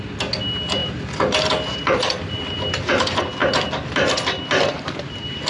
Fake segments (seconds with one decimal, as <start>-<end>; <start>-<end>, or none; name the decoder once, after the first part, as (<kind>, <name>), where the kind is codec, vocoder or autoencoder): 0.8-2.9 (vocoder, BigVGAN v2); 3.4-5.5